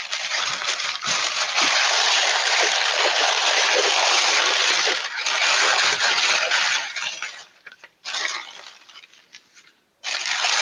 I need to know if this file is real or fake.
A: fake